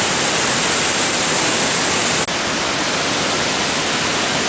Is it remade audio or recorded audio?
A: recorded